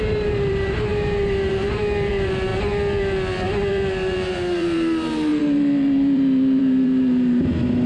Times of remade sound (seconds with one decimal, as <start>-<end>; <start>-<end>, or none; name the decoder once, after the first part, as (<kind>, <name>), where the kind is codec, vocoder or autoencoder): 0.0-2.5 (vocoder, BigVGAN v2); 3.7-7.9